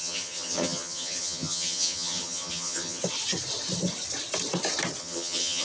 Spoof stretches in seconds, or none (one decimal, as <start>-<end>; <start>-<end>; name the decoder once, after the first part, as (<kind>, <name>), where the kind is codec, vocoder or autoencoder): 0.0-3.0 (vocoder, HiFi-GAN); 5.0-5.6